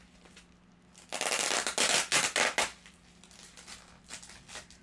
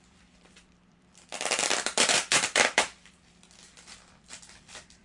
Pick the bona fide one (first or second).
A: first